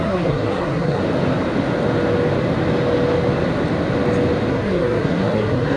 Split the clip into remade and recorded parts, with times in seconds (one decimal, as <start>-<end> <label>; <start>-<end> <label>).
0.0-1.0 remade; 1.0-4.5 recorded; 4.5-5.8 remade